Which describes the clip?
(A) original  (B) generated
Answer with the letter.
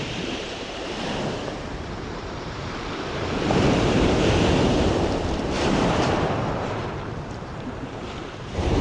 B